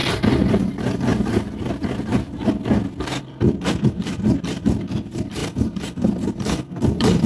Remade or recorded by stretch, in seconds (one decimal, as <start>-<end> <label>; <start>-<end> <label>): 0.0-1.1 remade; 1.1-3.2 recorded; 3.2-7.3 remade